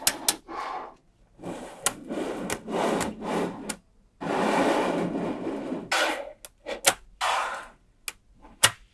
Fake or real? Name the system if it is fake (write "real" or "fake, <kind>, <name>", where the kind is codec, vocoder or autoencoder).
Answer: real